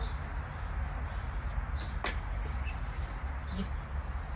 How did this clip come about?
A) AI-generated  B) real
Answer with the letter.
B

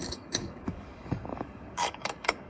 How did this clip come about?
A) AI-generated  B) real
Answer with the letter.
A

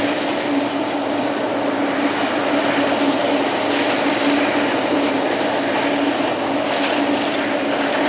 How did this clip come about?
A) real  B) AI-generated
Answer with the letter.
A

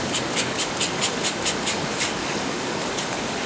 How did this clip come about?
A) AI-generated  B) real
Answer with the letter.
A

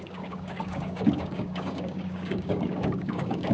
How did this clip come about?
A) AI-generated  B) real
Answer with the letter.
A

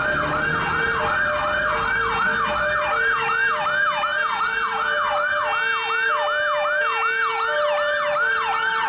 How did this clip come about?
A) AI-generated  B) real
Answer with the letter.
B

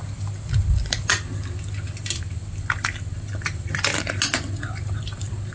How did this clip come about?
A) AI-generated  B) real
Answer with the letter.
B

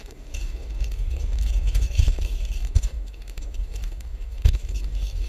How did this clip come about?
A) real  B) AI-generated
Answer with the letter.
B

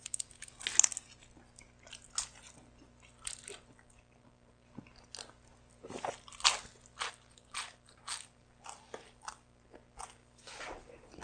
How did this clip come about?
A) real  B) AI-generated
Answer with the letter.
A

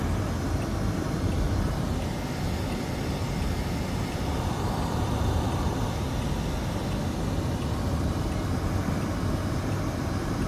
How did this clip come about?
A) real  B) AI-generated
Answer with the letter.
A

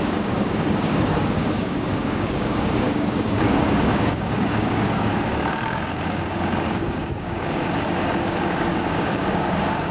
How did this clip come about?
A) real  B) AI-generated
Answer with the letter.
B